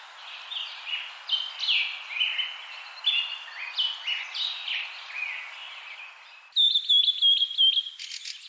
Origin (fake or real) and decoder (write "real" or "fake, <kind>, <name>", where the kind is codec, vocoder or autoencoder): real